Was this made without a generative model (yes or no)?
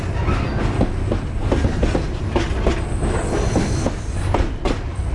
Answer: yes